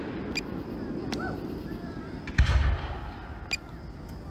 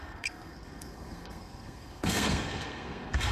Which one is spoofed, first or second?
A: second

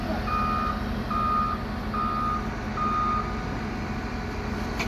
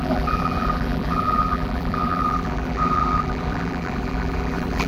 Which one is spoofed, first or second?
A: second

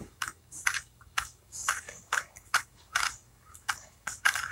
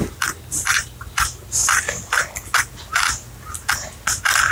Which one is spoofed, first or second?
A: first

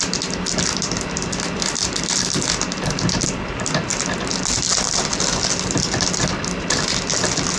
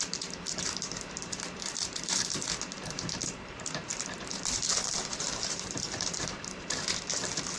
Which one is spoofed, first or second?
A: second